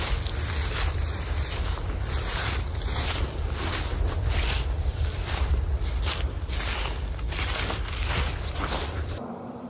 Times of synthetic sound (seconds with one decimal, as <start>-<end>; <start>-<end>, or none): none